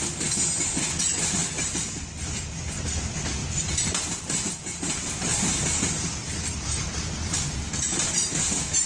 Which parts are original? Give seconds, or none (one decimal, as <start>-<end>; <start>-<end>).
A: 0.0-1.4; 2.1-3.4; 4.5-8.9